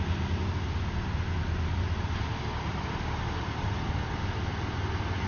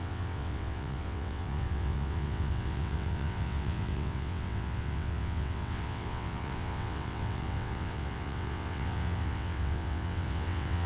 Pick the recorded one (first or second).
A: first